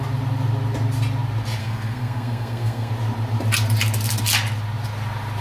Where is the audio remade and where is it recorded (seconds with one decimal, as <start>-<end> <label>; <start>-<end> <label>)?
0.0-1.6 recorded; 1.6-2.9 remade; 2.9-5.4 recorded